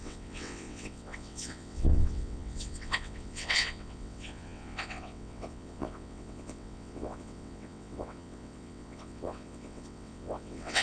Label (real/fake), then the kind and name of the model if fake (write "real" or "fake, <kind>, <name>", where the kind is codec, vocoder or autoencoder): fake, vocoder, WaveNeXt